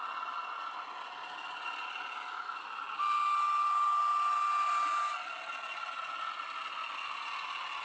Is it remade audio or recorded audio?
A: recorded